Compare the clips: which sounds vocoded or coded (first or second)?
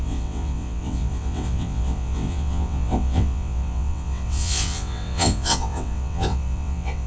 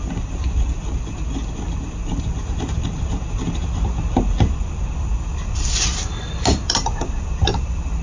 first